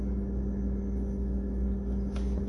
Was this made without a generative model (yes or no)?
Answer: yes